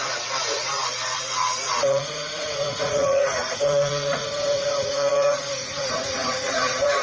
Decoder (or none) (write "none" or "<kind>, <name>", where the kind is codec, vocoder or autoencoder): vocoder, Vocos